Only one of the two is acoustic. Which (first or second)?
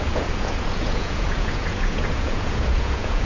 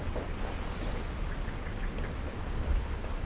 second